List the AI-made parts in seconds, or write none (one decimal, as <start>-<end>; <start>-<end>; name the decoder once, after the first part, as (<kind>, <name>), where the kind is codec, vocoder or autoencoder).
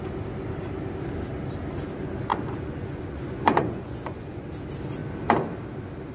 2.3-4.5 (vocoder, Vocos)